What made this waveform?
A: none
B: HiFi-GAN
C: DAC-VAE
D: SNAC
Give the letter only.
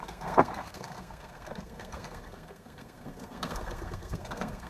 D